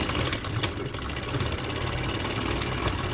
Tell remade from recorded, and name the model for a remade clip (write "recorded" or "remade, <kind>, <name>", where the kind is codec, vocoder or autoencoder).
recorded